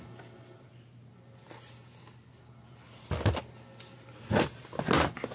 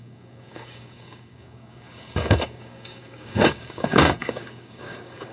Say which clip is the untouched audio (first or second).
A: first